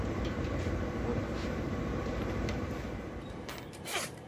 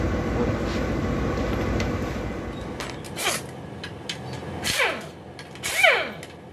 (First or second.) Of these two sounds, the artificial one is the first